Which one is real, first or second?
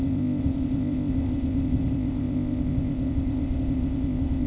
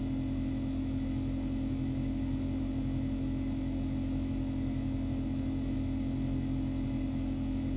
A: second